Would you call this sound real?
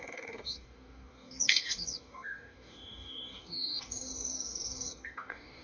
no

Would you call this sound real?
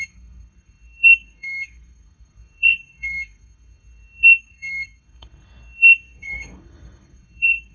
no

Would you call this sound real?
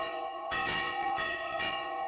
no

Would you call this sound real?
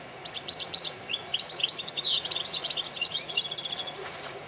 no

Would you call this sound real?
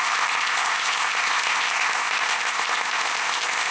no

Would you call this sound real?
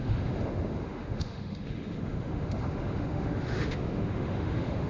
no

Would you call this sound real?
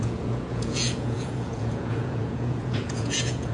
no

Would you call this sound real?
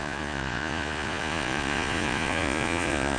no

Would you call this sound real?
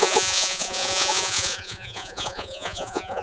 no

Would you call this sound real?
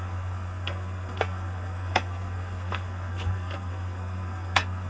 no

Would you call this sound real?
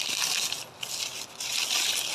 yes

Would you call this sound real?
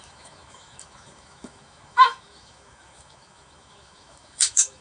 no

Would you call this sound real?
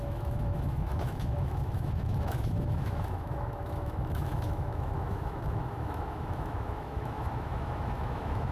no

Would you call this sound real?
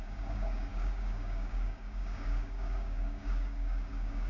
no